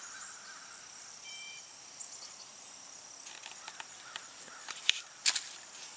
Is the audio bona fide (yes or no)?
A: yes